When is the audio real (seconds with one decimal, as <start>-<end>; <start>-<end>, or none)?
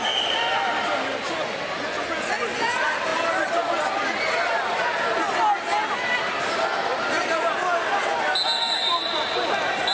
0.0-9.9